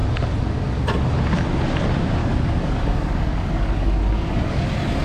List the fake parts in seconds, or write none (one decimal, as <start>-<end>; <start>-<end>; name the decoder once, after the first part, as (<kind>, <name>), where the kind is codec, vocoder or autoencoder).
2.2-4.6 (codec, DAC)

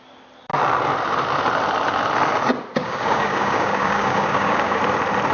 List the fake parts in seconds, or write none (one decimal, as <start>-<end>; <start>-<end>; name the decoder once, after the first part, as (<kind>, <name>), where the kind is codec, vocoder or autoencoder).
2.8-4.8 (codec, DAC)

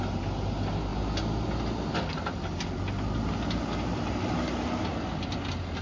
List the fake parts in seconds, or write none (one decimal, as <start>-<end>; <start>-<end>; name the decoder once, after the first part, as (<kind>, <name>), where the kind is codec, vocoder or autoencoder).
none

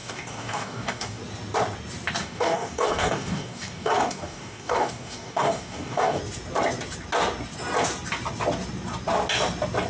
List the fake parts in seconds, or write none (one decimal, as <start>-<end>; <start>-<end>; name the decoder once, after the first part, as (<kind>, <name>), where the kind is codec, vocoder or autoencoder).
0.0-1.2 (codec, DAC); 2.2-6.2

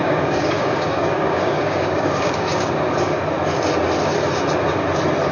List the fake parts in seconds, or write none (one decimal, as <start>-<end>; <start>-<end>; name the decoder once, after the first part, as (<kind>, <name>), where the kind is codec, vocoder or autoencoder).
0.0-3.2 (codec, DAC)

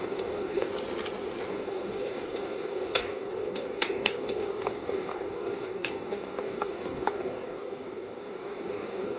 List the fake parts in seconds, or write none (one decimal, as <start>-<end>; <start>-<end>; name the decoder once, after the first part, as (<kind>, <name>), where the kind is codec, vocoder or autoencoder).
0.0-0.7 (codec, DAC); 1.5-9.2

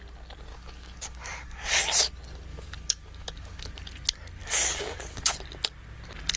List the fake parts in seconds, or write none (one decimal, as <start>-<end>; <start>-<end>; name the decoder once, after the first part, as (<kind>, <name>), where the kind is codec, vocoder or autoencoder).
0.5-1.8 (codec, DAC); 2.5-3.7; 4.4-5.3